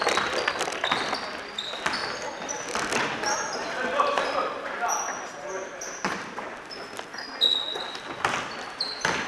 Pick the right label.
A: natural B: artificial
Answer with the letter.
A